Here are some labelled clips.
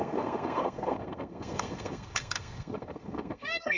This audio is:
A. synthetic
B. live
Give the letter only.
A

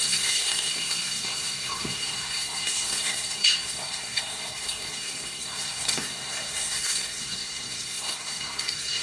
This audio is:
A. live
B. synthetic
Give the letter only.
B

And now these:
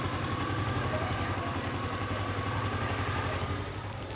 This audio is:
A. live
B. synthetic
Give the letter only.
A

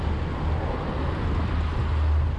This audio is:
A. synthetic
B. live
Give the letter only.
B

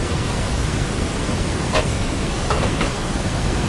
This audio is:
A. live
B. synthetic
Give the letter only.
B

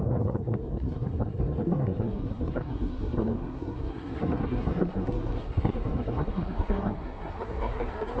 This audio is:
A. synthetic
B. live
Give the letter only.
A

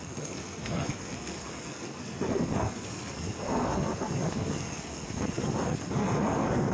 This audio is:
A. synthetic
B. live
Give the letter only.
A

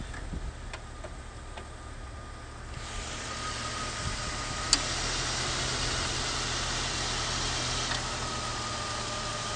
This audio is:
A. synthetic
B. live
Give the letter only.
B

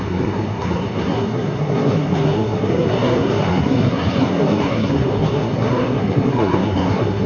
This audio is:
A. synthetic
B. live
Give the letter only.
A